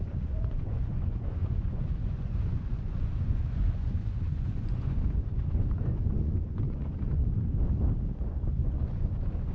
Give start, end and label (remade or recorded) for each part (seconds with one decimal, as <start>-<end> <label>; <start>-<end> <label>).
0.0-7.2 remade; 7.2-8.1 recorded; 8.1-9.5 remade